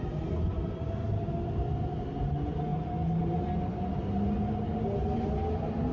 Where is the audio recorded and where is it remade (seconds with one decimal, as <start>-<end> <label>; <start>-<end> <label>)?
0.0-5.9 recorded